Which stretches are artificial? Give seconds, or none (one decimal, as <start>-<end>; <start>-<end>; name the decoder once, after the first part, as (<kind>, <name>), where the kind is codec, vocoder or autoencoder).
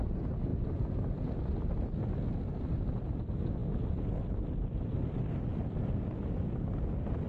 none